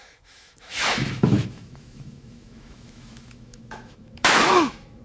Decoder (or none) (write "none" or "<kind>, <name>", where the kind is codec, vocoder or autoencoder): autoencoder, DAC-VAE